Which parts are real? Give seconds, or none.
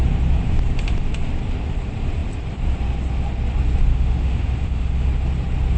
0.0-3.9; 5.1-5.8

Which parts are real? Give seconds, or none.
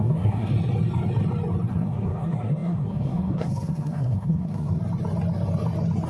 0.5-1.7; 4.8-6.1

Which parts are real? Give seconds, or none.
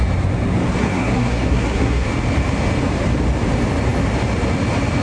0.0-0.8; 2.1-5.0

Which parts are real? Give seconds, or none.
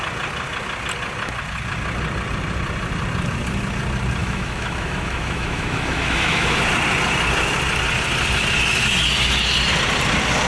0.0-4.2; 6.6-10.5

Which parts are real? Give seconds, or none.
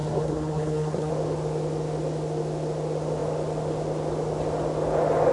1.1-5.3